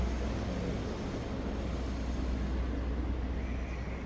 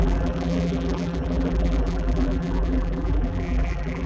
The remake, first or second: second